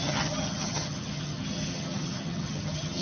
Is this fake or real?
fake